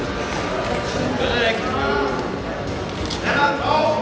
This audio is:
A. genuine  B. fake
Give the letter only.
A